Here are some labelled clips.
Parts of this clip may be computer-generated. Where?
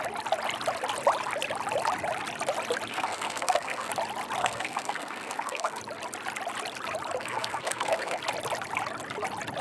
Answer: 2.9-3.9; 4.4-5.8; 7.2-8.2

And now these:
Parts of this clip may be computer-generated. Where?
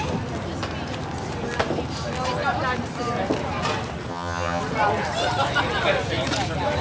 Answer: 4.1-4.6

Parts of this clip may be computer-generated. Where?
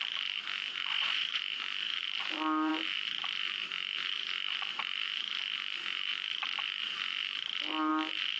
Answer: 0.9-1.4